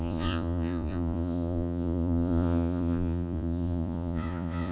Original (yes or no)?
no